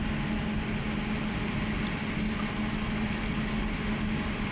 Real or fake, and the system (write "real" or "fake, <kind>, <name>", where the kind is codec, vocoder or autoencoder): real